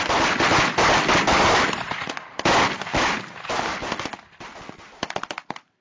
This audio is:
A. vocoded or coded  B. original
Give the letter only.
B